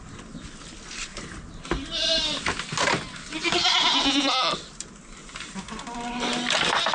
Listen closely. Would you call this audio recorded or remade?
recorded